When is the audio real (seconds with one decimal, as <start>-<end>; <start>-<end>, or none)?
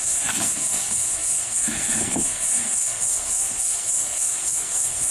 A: none